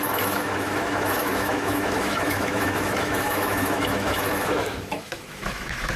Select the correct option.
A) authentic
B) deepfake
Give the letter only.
B